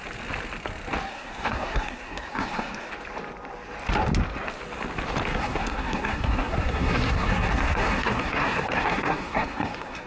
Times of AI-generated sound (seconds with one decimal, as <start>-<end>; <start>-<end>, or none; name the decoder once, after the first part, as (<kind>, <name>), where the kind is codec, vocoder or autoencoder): 1.1-2.9 (codec, SNAC); 5.3-10.1